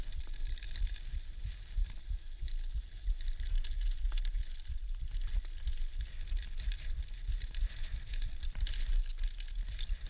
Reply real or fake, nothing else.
real